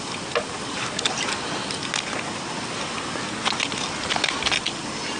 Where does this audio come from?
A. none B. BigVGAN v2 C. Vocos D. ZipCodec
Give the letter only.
A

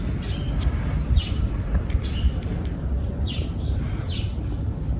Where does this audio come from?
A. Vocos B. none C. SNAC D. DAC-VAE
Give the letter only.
B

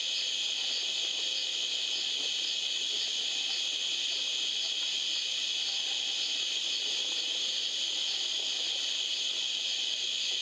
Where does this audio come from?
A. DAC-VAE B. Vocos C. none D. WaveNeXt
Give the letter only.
C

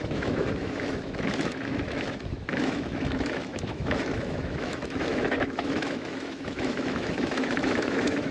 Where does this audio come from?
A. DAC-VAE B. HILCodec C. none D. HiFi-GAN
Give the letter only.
A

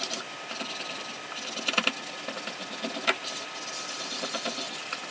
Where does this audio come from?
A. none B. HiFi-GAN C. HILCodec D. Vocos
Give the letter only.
A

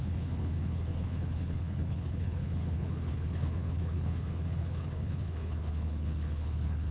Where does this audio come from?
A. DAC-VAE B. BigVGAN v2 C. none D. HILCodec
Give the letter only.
D